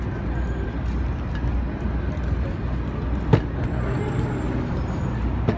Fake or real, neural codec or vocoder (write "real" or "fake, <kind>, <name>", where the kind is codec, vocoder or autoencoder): real